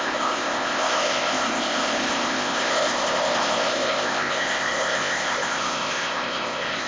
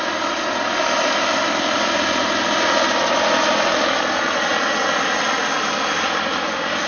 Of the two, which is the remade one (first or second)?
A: first